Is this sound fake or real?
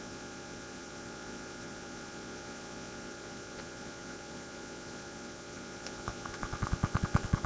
fake